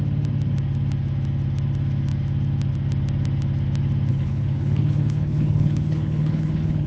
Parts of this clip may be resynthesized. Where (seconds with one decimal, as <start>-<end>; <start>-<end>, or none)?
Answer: 4.1-6.9